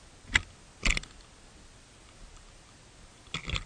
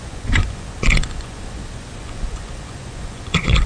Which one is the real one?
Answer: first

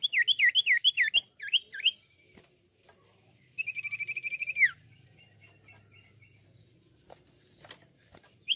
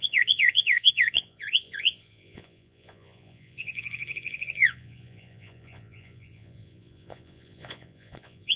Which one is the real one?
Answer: first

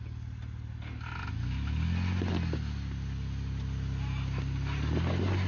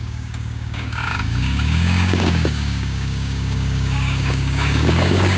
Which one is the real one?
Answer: first